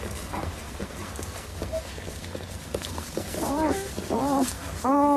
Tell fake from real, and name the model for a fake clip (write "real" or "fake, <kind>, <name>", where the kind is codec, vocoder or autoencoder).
fake, codec, SNAC